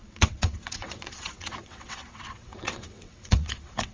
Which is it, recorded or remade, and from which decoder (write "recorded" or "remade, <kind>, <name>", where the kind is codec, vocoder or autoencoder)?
remade, vocoder, WaveNeXt